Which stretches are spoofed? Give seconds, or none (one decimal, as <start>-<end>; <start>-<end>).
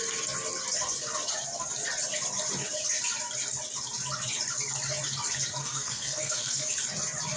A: 5.6-6.7